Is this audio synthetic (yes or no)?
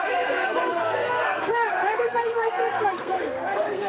yes